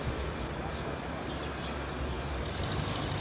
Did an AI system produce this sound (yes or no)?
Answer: no